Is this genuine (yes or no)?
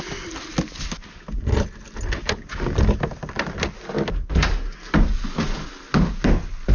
yes